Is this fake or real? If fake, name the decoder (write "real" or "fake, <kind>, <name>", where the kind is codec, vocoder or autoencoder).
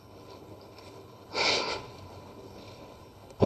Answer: fake, codec, HILCodec